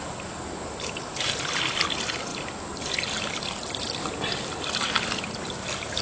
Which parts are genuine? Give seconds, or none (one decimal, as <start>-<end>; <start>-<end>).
0.0-2.3